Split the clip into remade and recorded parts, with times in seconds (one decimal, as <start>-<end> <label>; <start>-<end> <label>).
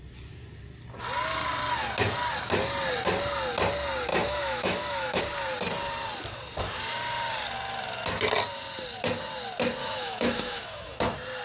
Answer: 0.0-4.1 recorded; 4.1-5.2 remade; 5.2-9.8 recorded; 9.8-11.0 remade; 11.0-11.4 recorded